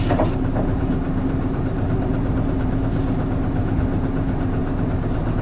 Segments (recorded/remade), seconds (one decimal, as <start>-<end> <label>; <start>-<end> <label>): 0.0-5.4 remade